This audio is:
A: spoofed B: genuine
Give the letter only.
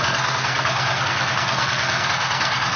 A